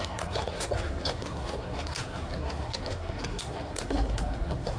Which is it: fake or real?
fake